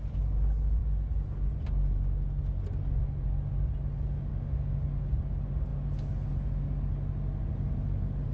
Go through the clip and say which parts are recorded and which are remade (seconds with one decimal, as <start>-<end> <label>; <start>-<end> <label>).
0.0-4.3 recorded; 4.3-5.2 remade; 5.2-8.3 recorded